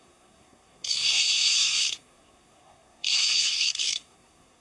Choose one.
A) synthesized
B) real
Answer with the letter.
A